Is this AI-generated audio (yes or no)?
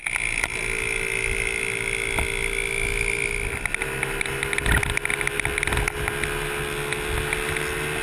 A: no